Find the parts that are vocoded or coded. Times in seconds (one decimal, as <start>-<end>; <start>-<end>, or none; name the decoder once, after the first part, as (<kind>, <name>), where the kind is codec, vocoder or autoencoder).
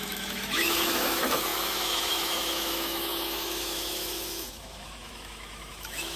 0.0-6.2 (autoencoder, DAC-VAE)